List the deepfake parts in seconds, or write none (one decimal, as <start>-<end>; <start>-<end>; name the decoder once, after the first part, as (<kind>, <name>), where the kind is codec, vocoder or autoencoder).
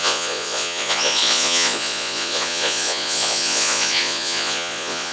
0.0-5.1 (vocoder, Vocos)